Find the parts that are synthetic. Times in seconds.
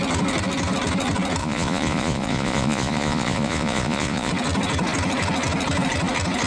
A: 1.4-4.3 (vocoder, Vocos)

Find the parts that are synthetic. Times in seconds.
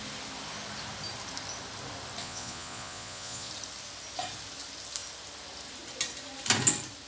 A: 2.2-3.5 (vocoder, Vocos)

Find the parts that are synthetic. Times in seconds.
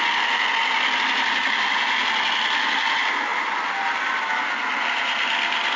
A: none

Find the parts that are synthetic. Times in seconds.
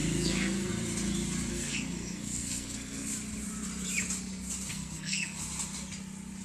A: 0.0-0.7 (codec, SNAC); 1.5-3.1; 4.7-5.4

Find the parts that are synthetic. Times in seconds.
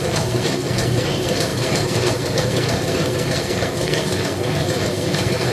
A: 0.0-5.5 (codec, SNAC)